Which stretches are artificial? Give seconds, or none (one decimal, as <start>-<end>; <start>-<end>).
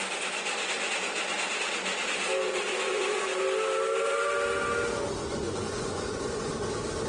2.7-3.4; 5.2-6.5